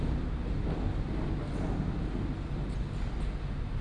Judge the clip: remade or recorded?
recorded